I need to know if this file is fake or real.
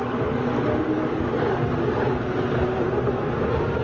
real